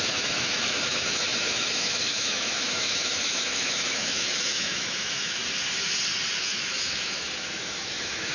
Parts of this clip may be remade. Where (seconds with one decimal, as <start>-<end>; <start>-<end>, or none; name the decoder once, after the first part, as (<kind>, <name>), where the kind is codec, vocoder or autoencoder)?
0.0-5.4 (autoencoder, DAC-VAE); 6.4-8.3